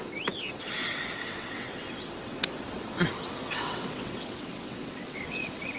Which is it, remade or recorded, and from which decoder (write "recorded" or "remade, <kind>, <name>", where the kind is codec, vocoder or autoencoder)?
remade, vocoder, WaveNeXt